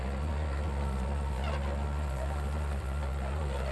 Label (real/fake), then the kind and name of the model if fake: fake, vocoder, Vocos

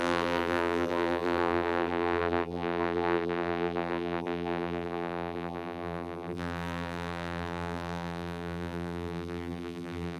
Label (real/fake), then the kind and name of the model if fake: fake, vocoder, BigVGAN v2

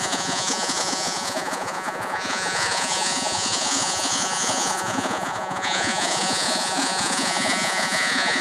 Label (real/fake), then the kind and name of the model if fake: fake, vocoder, Vocos